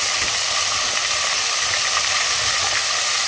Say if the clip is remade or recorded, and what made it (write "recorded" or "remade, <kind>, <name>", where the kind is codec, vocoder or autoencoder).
recorded